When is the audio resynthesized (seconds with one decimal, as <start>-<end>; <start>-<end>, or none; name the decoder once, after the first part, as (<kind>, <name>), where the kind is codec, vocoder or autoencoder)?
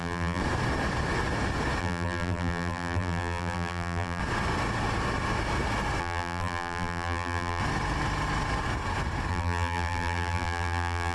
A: 0.0-0.4 (vocoder, BigVGAN v2); 1.8-4.2; 6.0-7.6; 9.3-11.1